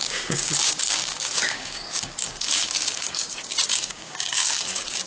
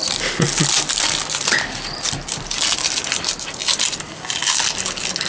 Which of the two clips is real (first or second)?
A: second